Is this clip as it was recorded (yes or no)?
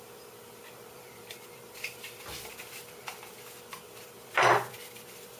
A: no